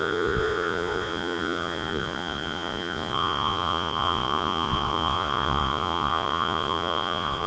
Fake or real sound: fake